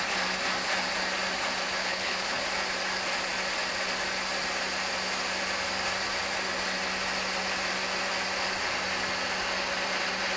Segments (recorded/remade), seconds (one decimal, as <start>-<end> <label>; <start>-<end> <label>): 0.0-1.8 recorded; 1.8-2.4 remade; 2.4-10.4 recorded